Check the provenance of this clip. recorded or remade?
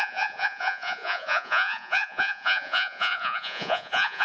remade